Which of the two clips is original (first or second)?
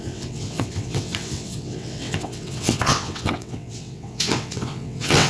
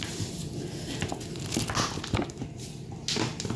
second